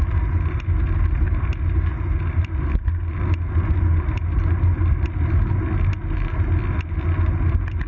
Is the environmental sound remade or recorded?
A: recorded